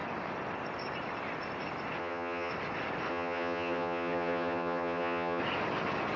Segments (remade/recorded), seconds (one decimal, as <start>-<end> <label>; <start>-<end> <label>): 0.0-2.0 recorded; 2.0-2.5 remade; 2.5-3.1 recorded; 3.1-5.4 remade; 5.4-6.2 recorded

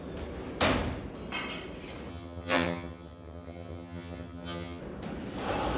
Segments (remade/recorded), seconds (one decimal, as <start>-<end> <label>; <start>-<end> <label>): 0.0-2.1 recorded; 2.1-4.8 remade; 4.8-5.8 recorded

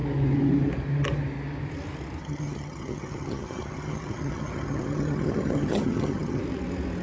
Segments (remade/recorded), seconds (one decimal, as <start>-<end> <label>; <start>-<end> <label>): 0.0-2.2 recorded; 2.2-6.4 remade; 6.4-7.0 recorded

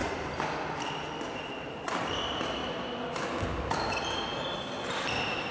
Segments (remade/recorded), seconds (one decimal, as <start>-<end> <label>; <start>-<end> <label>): 0.0-5.5 recorded

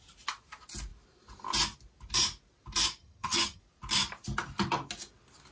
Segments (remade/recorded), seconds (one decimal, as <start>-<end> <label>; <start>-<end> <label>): 0.0-3.0 recorded; 3.0-3.6 remade; 3.6-5.5 recorded